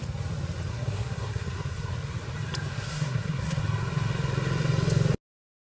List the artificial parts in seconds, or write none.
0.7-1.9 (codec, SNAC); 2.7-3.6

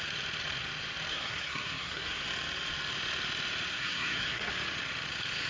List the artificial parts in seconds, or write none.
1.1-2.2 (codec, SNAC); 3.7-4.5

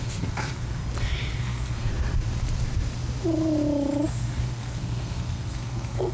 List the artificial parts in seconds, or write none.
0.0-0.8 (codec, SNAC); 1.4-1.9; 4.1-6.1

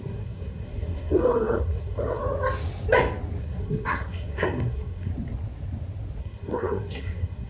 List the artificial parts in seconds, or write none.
0.0-2.2 (codec, SNAC); 3.4-5.1; 6.2-7.5

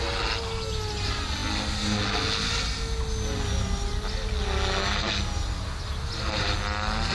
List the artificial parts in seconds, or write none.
none

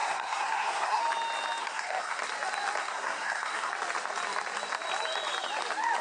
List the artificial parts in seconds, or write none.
0.0-1.0 (codec, SNAC); 1.6-2.2; 2.8-3.7

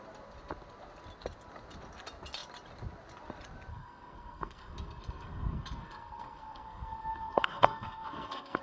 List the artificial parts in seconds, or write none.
3.7-8.6 (codec, SNAC)

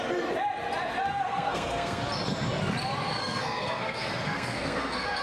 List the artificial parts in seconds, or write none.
1.1-2.0 (codec, SNAC); 3.1-5.2